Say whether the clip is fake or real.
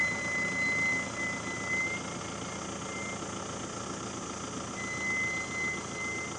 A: real